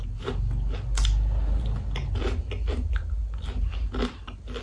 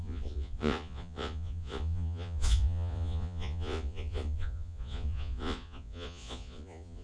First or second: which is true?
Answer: first